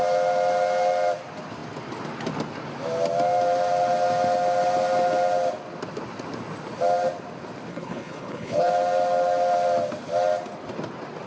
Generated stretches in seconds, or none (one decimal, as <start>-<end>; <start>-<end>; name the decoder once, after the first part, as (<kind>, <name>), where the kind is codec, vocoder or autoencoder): 7.7-8.7 (codec, HILCodec)